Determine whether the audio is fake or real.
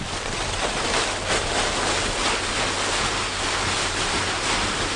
real